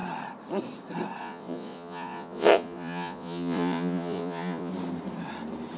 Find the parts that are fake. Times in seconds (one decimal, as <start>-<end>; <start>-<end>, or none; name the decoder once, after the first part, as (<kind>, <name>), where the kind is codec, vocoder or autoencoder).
1.2-4.7 (vocoder, Vocos)